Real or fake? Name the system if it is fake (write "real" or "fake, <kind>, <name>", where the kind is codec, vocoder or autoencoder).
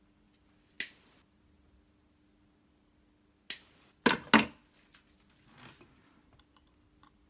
real